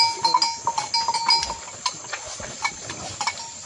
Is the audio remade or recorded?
recorded